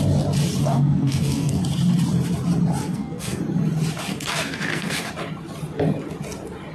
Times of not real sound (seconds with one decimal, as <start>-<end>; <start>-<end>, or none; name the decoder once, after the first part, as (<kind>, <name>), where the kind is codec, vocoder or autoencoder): 0.6-1.6 (codec, SNAC); 2.8-3.4; 4.1-5.1